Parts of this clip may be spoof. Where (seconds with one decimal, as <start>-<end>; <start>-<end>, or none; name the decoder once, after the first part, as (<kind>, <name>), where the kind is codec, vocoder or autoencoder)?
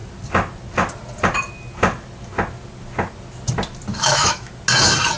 3.9-4.5 (autoencoder, DAC-VAE)